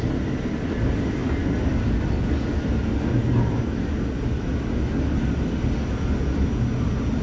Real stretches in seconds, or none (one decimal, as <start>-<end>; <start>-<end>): 0.0-7.2